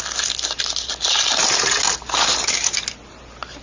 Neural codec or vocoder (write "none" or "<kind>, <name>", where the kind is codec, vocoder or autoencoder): none